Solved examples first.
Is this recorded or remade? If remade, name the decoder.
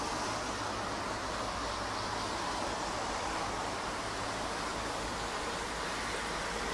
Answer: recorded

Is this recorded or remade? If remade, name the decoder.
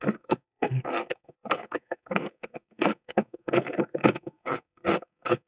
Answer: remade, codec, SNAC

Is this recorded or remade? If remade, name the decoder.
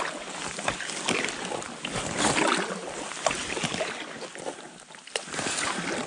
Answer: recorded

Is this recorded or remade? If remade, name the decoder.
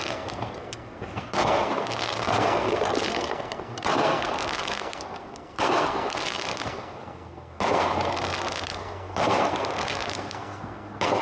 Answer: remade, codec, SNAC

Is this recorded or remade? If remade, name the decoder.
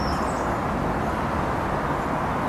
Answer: recorded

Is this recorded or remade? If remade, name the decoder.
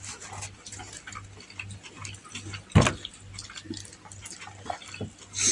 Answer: recorded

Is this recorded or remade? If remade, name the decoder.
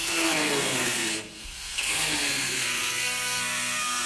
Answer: remade, codec, SNAC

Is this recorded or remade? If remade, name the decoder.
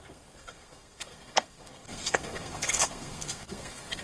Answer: remade, codec, SNAC